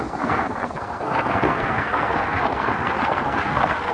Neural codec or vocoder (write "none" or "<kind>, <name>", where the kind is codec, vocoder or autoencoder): codec, SNAC